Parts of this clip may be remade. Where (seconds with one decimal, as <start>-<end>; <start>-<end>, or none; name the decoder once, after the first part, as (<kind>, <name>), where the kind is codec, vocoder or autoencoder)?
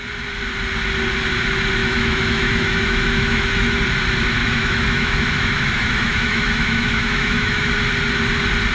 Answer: 1.8-3.8 (autoencoder, DAC-VAE); 4.4-7.7